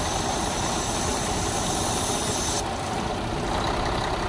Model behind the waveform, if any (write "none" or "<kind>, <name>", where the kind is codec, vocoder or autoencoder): none